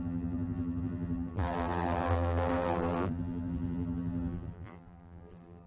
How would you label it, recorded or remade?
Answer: remade